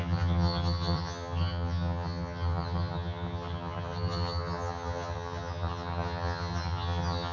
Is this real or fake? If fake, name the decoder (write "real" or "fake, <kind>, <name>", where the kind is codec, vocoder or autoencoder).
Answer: fake, vocoder, HiFi-GAN